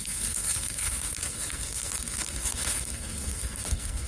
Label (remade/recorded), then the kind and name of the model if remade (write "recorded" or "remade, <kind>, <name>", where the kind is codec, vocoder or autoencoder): remade, codec, SNAC